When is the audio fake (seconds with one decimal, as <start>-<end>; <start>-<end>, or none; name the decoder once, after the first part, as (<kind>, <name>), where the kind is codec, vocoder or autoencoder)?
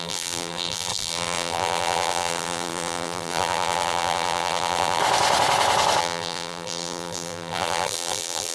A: 0.0-5.0 (vocoder, BigVGAN v2); 6.0-8.5